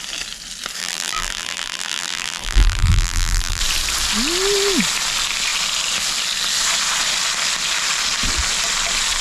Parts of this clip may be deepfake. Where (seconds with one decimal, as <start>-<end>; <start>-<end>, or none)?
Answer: 0.8-3.6